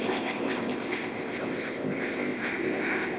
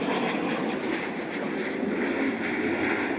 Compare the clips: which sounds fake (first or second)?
first